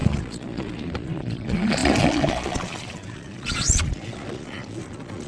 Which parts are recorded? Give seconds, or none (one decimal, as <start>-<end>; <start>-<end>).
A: none